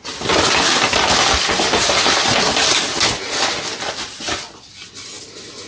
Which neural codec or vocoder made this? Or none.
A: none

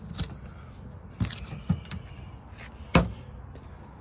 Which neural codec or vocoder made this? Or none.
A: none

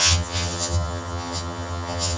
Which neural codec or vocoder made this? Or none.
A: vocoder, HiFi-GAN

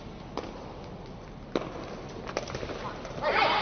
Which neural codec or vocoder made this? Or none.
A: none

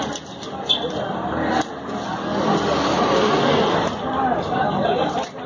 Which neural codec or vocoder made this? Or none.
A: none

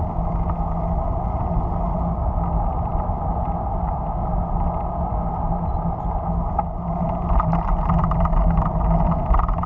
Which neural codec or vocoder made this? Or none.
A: none